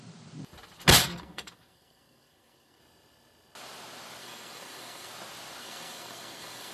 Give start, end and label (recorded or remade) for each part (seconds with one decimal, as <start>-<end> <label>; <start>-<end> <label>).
0.0-1.0 recorded; 1.0-2.8 remade; 2.8-4.2 recorded; 4.2-5.1 remade; 5.1-5.6 recorded; 5.6-6.7 remade